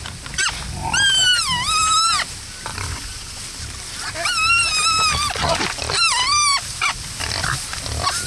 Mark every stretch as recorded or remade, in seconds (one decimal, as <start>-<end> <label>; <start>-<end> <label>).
0.0-2.7 recorded; 2.7-3.4 remade; 3.4-8.3 recorded